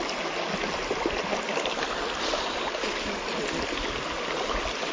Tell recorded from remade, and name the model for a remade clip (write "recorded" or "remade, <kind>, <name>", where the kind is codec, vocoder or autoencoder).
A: recorded